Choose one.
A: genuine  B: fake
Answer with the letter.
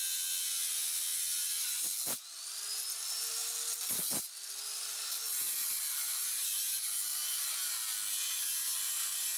A